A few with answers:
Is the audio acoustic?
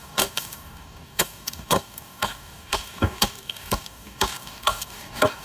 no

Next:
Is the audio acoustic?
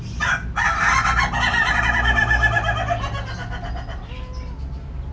yes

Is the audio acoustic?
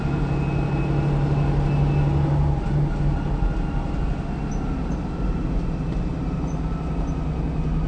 yes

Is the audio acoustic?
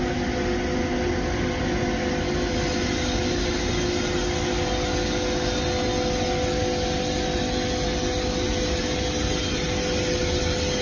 yes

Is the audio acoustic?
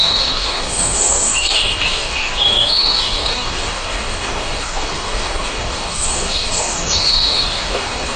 no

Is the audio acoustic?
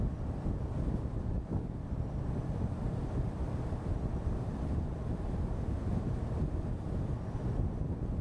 yes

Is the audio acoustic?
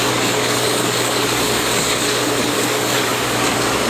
no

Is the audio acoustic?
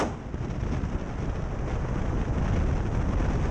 yes